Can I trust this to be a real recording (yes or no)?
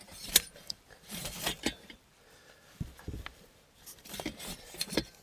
no